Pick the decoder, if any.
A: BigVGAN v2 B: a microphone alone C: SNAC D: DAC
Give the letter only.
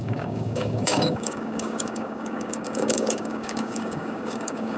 D